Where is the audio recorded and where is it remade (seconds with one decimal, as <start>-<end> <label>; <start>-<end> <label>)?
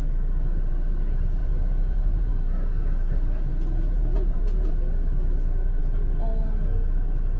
0.0-1.4 recorded; 1.4-2.3 remade; 2.3-3.5 recorded; 3.5-4.7 remade; 4.7-7.4 recorded